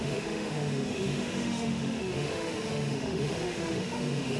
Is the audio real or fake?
fake